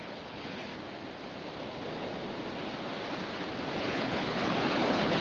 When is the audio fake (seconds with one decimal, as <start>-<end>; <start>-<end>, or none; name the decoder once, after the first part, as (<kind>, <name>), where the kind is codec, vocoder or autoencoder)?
0.0-0.7 (codec, HILCodec); 3.8-5.2